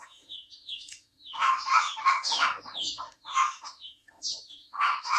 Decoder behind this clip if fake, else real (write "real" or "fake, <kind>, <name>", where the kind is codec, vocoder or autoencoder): fake, autoencoder, DAC-VAE